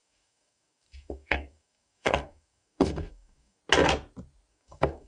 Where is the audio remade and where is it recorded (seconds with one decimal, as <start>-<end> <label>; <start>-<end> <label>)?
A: 0.0-3.6 remade; 3.6-4.5 recorded; 4.5-5.1 remade